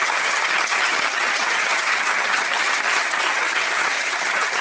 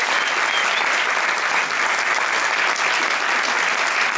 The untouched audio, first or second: second